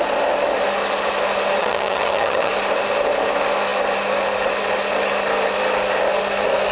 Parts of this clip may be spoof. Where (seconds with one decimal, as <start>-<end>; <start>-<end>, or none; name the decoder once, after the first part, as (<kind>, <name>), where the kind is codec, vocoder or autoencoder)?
1.6-2.5 (vocoder, HiFi-GAN)